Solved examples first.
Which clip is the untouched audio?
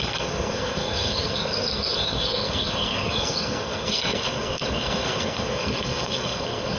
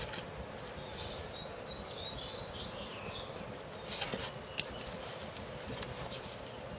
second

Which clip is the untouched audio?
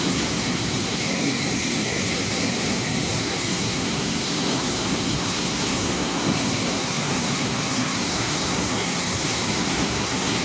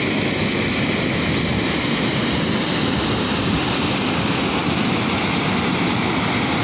second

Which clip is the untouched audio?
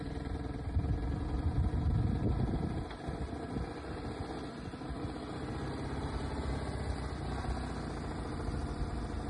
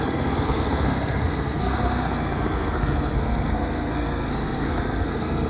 first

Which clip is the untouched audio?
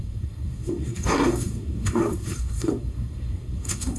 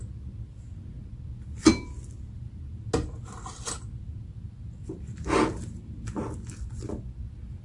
second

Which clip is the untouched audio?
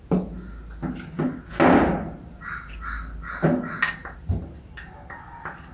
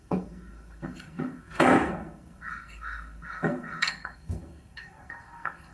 first